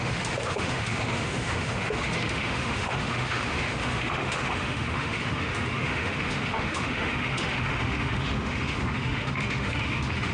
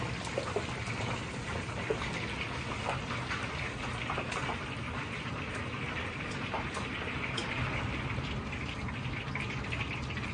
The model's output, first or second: first